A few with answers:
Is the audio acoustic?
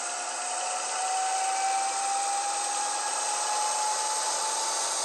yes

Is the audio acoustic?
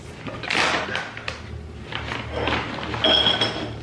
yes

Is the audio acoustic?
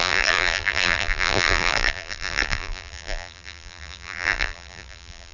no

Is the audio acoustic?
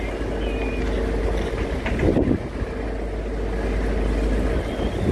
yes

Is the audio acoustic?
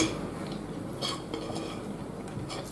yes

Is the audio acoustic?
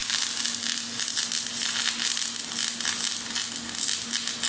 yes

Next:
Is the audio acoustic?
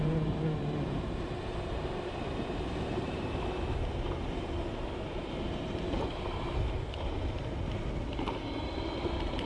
no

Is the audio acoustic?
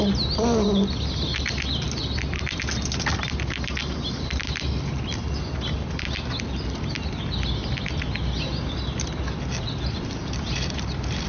yes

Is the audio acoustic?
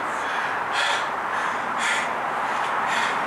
yes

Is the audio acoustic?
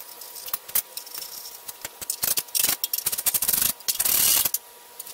yes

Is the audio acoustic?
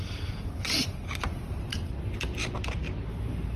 yes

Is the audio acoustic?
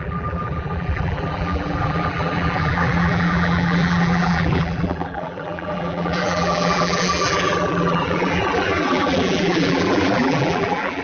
no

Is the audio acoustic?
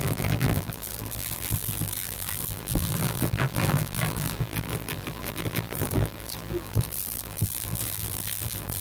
no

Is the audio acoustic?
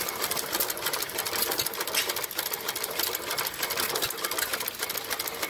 yes